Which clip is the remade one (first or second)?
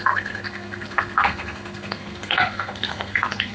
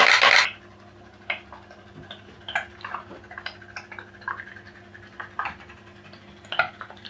first